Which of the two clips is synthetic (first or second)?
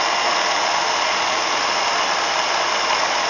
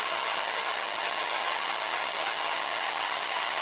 second